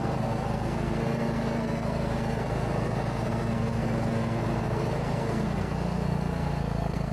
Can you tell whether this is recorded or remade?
remade